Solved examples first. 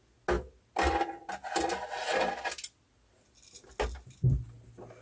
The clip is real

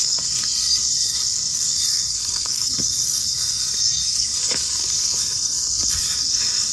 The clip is fake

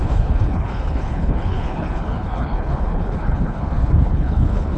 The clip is fake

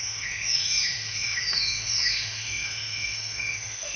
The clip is fake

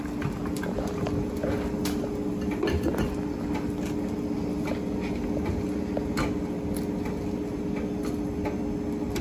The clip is real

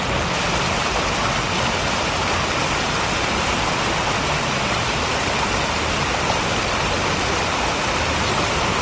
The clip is real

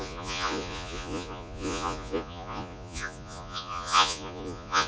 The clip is fake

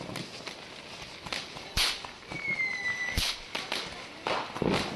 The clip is real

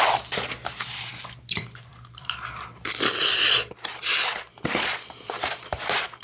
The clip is fake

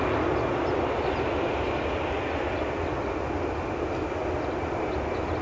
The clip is real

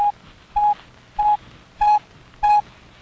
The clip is real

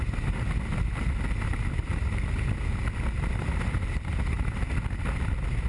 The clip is real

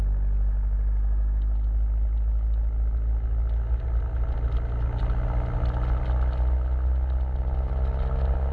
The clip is real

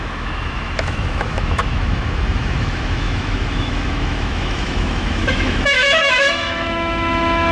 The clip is fake